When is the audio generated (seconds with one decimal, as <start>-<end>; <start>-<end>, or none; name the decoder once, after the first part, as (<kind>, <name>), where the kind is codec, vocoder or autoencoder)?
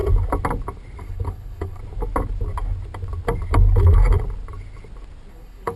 1.0-1.8 (codec, HILCodec); 5.3-5.8